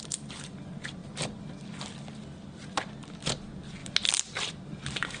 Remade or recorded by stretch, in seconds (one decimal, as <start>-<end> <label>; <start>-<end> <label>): 0.0-1.0 recorded; 1.0-1.8 remade; 1.8-3.8 recorded; 3.8-5.2 remade